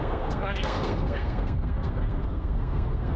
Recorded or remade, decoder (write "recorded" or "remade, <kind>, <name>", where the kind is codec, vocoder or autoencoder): remade, codec, SNAC